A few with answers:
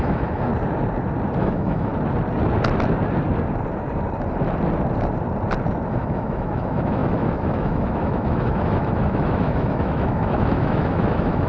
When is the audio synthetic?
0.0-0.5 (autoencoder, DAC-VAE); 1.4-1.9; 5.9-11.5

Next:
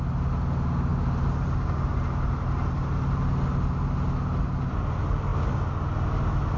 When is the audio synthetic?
none

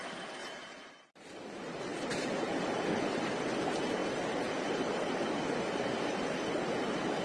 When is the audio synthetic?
none

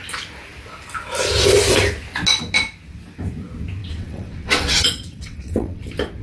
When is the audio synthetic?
3.8-5.8 (vocoder, WaveNeXt)